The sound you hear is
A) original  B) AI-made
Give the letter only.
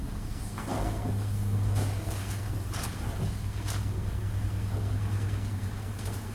B